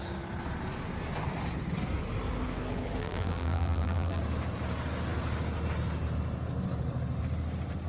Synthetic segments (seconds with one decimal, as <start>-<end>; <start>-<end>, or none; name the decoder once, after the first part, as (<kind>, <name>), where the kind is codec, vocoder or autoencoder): 3.0-4.2 (vocoder, BigVGAN v2)

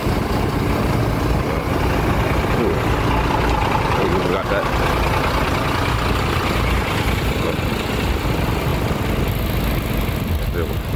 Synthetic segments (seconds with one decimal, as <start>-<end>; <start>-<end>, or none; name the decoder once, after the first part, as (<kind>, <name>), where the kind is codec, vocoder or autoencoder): 3.6-4.5 (vocoder, BigVGAN v2)